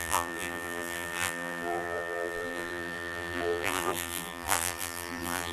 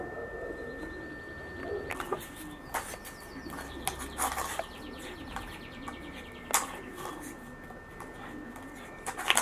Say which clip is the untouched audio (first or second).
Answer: second